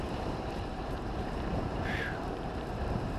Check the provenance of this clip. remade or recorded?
remade